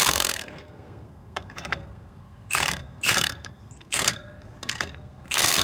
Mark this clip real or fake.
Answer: fake